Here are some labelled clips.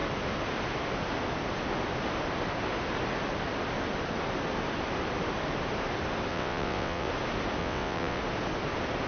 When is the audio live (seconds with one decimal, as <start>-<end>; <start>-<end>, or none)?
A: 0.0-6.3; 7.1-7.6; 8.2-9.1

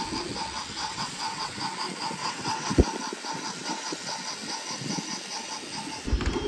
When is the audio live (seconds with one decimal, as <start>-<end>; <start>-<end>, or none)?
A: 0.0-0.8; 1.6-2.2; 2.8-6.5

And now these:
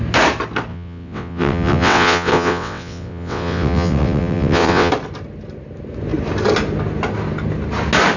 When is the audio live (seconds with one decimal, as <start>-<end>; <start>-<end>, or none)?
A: 0.0-0.7; 4.9-8.2

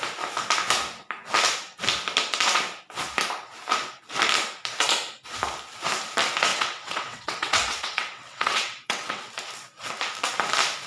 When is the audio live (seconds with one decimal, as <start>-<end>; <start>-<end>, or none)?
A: 0.0-6.5; 9.3-10.9

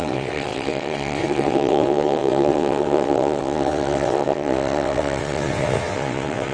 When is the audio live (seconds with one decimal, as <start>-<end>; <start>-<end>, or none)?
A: none